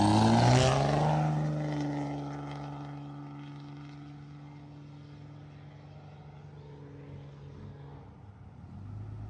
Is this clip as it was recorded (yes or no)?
yes